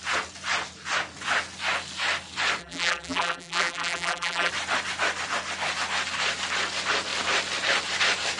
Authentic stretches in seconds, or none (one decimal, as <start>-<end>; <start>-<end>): 0.0-2.6; 4.5-8.4